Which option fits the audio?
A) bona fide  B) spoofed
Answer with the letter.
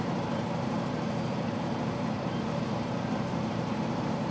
B